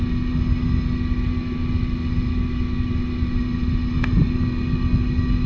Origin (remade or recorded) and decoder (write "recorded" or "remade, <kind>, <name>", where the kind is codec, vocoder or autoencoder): recorded